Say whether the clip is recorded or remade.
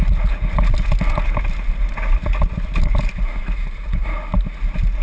recorded